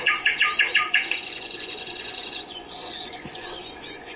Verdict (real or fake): fake